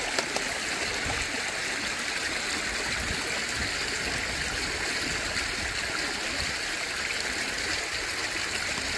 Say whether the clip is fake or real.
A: real